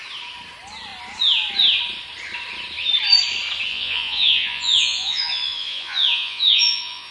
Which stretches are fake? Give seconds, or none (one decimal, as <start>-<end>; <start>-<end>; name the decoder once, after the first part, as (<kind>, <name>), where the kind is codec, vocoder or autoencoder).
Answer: 3.7-7.1 (vocoder, Vocos)